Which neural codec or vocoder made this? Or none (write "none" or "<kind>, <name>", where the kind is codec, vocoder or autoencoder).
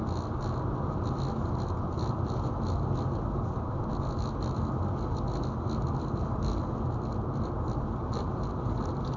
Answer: none